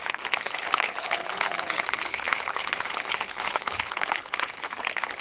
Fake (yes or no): yes